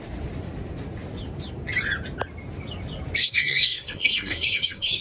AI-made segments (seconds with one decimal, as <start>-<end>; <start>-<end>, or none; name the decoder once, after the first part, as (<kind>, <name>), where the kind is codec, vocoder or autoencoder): 3.2-5.0 (codec, SNAC)